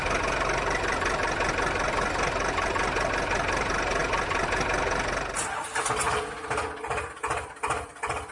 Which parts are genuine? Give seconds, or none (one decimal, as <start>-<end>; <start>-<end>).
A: 0.0-8.3

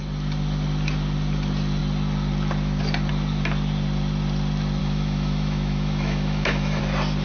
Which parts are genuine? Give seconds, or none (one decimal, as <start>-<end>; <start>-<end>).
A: 0.0-4.8; 6.8-7.2

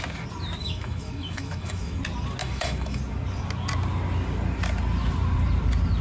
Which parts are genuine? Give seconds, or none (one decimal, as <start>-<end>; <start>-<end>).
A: 0.0-0.6; 2.0-2.4; 3.0-6.0

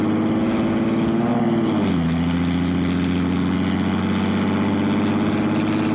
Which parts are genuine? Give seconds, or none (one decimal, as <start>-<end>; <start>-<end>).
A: 0.0-5.9

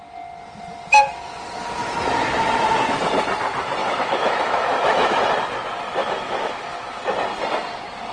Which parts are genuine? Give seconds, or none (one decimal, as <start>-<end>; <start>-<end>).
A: 0.0-3.8; 5.2-6.0; 6.8-8.1

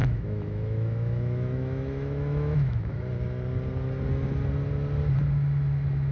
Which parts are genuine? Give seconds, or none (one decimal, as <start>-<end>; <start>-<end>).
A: 3.0-6.1